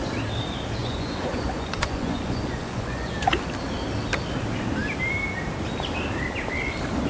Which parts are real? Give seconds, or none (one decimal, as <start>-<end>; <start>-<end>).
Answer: 0.0-0.8; 3.1-7.1